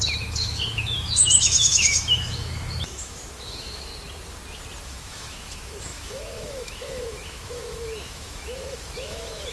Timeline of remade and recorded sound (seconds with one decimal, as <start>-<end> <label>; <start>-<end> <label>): 0.0-3.9 remade; 3.9-4.8 recorded; 4.8-9.5 remade